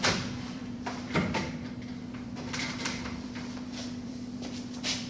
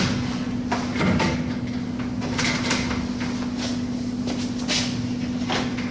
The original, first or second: second